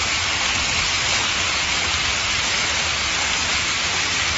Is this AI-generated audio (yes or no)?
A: no